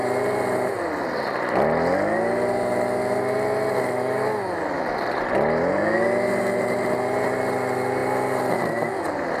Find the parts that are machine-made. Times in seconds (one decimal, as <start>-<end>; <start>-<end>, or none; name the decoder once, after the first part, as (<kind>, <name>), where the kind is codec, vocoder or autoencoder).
none